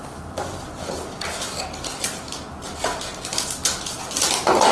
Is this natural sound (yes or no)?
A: yes